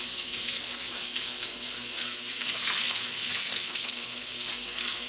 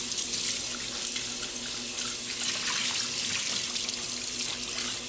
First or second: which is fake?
first